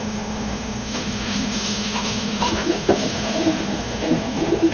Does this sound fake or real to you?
fake